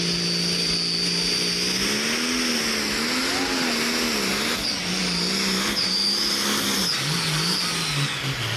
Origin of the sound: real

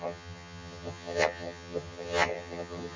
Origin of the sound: fake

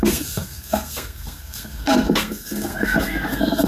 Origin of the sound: fake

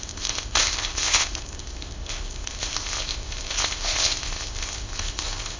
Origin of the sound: fake